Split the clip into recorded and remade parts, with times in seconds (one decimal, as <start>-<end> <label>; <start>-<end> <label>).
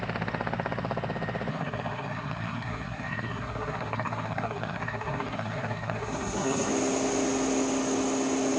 0.0-1.5 recorded; 1.5-6.7 remade; 6.7-8.6 recorded